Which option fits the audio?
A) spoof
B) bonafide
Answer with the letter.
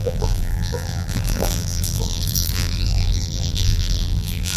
A